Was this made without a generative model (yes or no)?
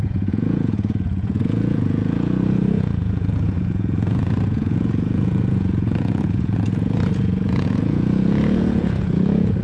no